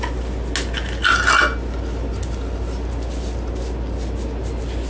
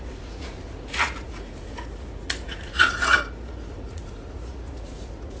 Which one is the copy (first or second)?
second